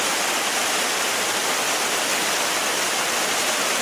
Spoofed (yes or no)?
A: no